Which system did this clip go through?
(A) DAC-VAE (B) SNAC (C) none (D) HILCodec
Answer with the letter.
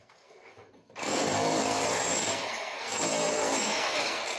B